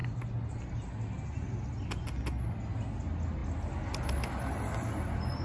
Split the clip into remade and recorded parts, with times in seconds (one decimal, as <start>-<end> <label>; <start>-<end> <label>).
0.0-5.4 recorded